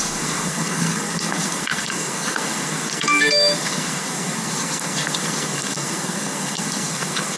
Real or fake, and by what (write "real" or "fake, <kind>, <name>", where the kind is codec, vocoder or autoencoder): fake, codec, SNAC